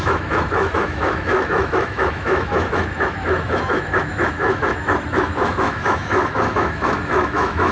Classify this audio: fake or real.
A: fake